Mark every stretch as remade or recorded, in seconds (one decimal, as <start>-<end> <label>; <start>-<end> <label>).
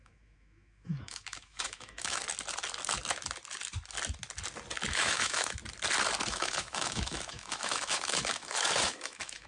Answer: 0.0-2.2 remade; 2.2-4.9 recorded; 4.9-5.6 remade; 5.6-6.3 recorded; 6.3-9.5 remade